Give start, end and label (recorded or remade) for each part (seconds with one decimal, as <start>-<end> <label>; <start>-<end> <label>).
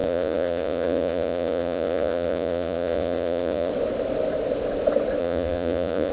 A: 0.0-3.7 remade; 3.7-5.2 recorded; 5.2-6.1 remade